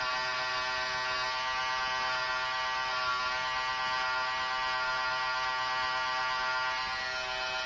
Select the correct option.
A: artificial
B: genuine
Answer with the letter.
B